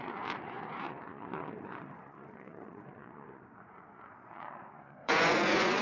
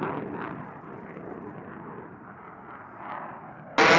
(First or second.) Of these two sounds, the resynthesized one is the first